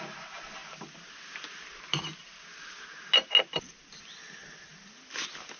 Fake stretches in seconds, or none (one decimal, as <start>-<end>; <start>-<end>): none